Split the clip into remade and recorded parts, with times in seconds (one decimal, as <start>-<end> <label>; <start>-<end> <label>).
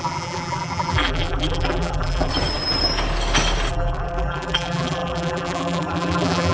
0.0-2.3 remade; 2.3-3.7 recorded; 3.7-6.5 remade